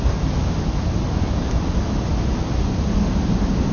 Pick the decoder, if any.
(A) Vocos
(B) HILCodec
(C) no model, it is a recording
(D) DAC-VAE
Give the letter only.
C